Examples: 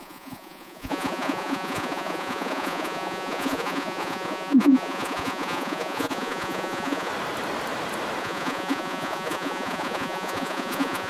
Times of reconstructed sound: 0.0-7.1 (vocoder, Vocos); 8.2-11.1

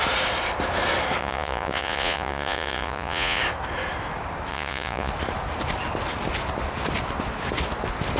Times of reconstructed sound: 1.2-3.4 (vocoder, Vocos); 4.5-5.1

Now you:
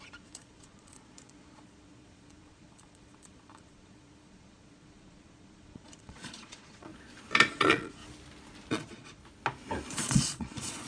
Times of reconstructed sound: 0.0-6.9 (vocoder, Vocos); 7.5-8.0; 8.7-9.2; 9.9-10.9

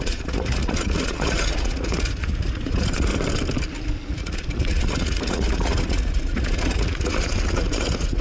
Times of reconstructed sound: 0.0-3.1 (vocoder, Vocos); 4.1-8.2